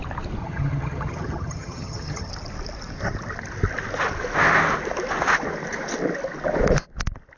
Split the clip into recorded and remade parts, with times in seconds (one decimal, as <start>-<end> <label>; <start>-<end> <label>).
0.0-0.4 recorded; 0.4-2.3 remade; 2.3-7.4 recorded